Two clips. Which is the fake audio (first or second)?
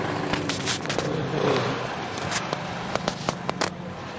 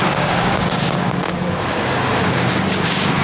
second